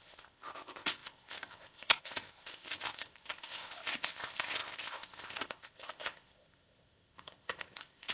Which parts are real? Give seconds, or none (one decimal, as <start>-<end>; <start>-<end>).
none